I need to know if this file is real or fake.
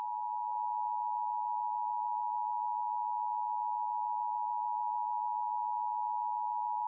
real